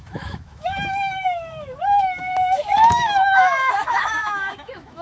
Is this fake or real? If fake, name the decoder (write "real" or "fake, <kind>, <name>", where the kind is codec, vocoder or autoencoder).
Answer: fake, autoencoder, DAC-VAE